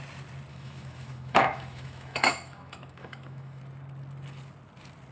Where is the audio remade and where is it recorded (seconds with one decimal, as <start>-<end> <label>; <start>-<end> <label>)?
0.0-0.5 recorded; 0.5-3.6 remade; 3.6-5.1 recorded